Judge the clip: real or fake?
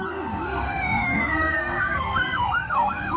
fake